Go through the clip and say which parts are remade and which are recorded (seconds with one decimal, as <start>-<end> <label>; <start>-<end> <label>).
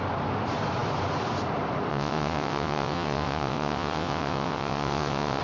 0.0-1.9 recorded; 1.9-5.4 remade